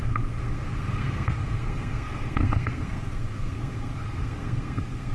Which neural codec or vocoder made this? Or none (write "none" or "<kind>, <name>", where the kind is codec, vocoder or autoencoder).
codec, SNAC